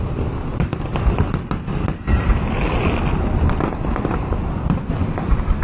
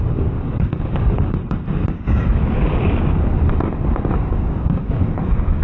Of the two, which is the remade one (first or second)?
second